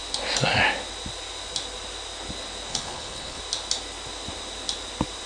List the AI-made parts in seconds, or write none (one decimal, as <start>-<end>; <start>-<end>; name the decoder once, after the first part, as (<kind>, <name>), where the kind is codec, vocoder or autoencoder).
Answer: 2.7-3.4 (codec, HILCodec)